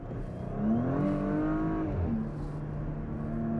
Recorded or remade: recorded